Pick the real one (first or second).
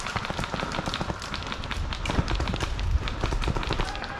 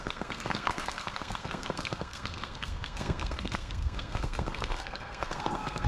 first